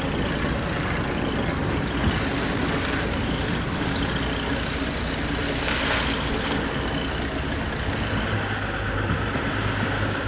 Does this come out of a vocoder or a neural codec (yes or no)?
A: no